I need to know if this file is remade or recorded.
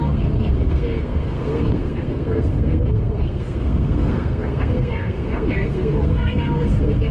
remade